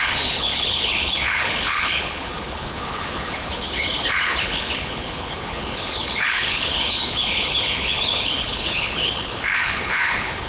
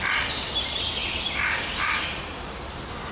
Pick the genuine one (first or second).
second